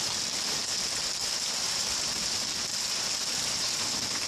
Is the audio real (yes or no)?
yes